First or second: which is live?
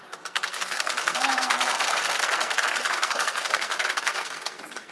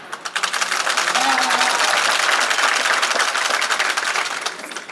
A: second